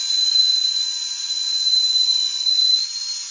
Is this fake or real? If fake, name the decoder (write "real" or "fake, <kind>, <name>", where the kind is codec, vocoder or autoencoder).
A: fake, vocoder, Vocos